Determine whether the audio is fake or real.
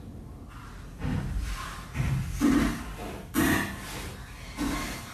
real